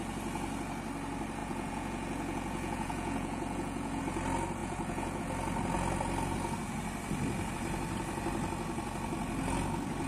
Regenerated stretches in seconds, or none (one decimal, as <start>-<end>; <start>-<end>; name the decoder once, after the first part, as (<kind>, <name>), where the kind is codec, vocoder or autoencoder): 1.4-4.0 (vocoder, Vocos); 4.6-5.2